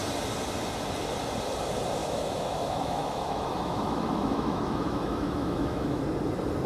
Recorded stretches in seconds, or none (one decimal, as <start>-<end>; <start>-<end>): 0.0-2.0; 6.0-6.7